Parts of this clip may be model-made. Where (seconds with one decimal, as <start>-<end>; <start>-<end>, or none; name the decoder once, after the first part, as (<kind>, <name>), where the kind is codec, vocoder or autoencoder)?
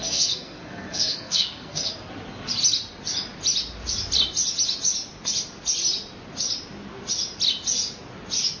0.0-1.9 (codec, SNAC)